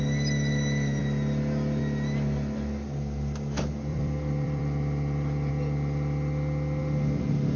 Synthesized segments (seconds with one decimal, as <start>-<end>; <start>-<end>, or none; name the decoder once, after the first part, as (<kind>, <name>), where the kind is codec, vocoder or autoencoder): 1.0-1.8 (vocoder, BigVGAN v2); 3.9-5.5